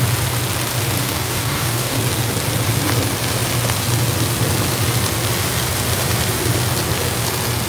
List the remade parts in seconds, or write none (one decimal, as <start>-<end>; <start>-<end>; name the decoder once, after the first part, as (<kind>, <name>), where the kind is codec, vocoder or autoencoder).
1.0-2.0 (codec, DAC)